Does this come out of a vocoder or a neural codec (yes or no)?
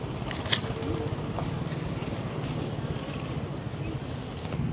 no